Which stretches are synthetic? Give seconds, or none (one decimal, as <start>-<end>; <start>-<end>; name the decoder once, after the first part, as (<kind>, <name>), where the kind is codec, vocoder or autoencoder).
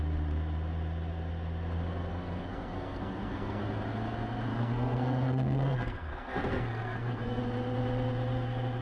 2.1-3.6 (codec, SNAC); 4.5-7.4